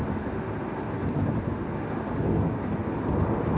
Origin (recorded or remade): recorded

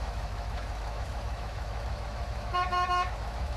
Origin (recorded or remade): remade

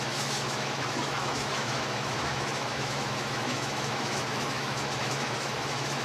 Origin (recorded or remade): remade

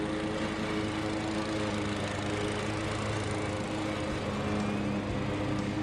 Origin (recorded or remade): recorded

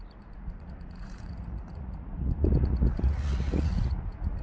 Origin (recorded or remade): remade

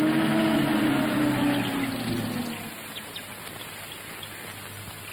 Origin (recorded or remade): recorded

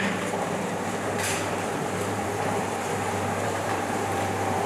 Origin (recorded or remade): remade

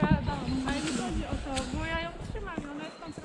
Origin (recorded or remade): recorded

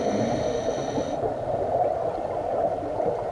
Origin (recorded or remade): recorded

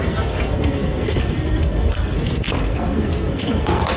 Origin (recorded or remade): remade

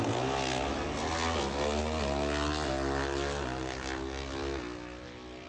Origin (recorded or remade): recorded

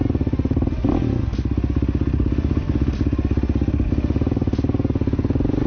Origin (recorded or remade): recorded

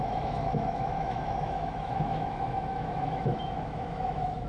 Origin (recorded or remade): remade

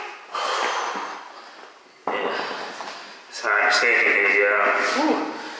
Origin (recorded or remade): recorded